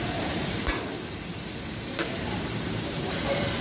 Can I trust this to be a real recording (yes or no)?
no